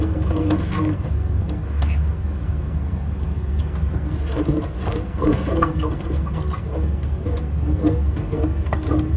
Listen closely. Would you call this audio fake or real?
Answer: fake